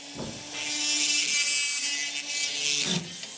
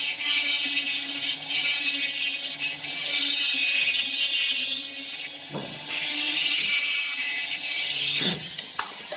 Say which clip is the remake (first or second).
second